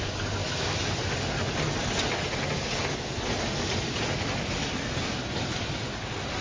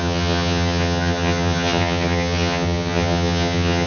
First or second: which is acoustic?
first